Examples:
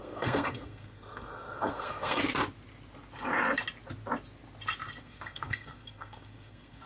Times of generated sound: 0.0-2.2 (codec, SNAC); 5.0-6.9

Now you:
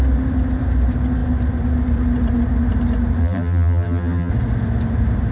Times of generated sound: 3.2-4.3 (vocoder, BigVGAN v2)

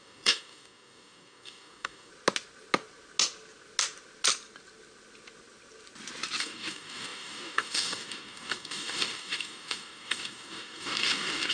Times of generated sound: 0.0-2.1 (codec, DAC); 6.4-11.5

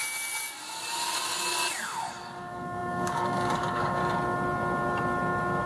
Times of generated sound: 2.3-4.0 (codec, DAC)

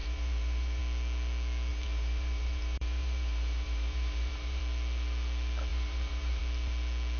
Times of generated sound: 0.0-0.8 (vocoder, BigVGAN v2); 1.7-4.6; 5.7-6.4